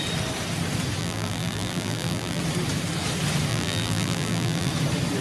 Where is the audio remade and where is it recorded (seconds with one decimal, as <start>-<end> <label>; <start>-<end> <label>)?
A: 0.0-1.0 recorded; 1.0-2.4 remade; 2.4-3.5 recorded; 3.5-4.7 remade; 4.7-5.2 recorded